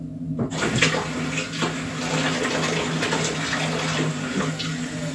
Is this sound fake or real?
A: real